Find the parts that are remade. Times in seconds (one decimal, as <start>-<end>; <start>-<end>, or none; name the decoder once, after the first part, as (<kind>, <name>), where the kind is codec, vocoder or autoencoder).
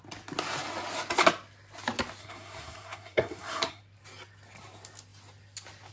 2.2-3.8 (codec, SNAC)